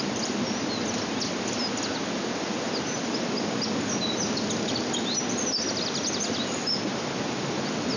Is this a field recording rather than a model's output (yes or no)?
yes